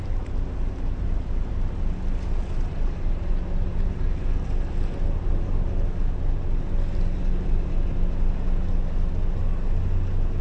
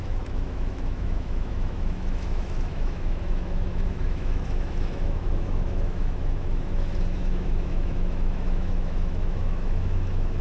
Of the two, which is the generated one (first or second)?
second